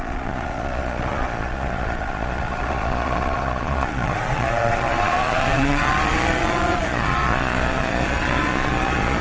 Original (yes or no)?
no